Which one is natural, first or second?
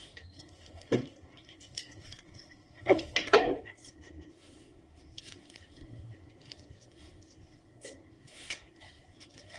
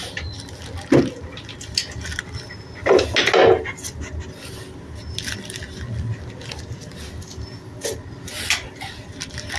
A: second